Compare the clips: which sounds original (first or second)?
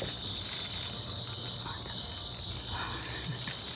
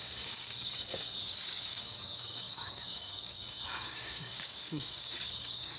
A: first